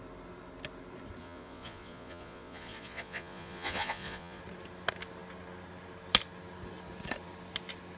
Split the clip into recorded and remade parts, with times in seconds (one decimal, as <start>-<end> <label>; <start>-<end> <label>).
0.0-1.2 recorded; 1.2-4.4 remade; 4.4-8.0 recorded

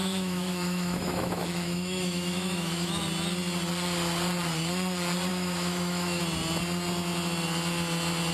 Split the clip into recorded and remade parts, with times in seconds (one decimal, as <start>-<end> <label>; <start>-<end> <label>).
0.0-3.0 remade; 3.0-5.3 recorded; 5.3-6.2 remade; 6.2-8.3 recorded

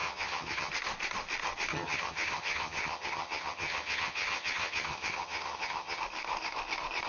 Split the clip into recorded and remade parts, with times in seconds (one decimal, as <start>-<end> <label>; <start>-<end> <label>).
0.0-0.7 remade; 0.7-1.7 recorded; 1.7-6.0 remade; 6.0-7.1 recorded

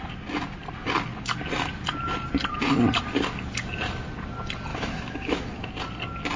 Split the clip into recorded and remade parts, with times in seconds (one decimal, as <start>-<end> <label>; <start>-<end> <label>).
0.0-4.7 recorded; 4.7-5.7 remade; 5.7-6.4 recorded

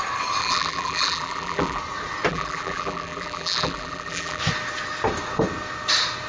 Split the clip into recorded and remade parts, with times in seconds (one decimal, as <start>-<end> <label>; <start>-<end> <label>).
0.0-0.4 recorded; 0.4-1.8 remade; 1.8-2.3 recorded; 2.3-4.4 remade; 4.4-6.3 recorded

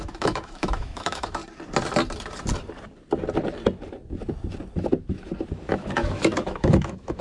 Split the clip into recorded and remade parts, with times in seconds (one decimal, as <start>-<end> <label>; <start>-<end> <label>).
0.0-1.4 remade; 1.4-5.7 recorded; 5.7-7.2 remade

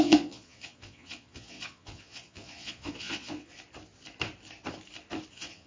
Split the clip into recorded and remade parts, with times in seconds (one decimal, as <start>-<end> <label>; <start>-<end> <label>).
0.0-3.5 remade; 3.5-5.3 recorded; 5.3-5.7 remade